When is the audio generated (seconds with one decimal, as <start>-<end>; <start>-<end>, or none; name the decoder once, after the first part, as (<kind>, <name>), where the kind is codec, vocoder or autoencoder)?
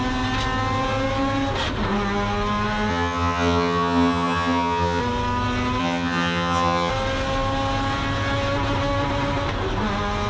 2.9-5.0 (vocoder, HiFi-GAN); 5.8-6.9